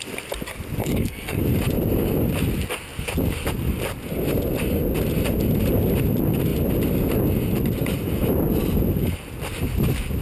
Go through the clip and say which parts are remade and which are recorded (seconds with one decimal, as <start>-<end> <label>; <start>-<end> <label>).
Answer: 0.0-0.8 recorded; 0.8-1.4 remade; 1.4-10.2 recorded